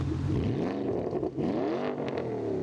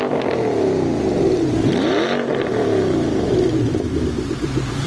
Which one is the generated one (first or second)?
second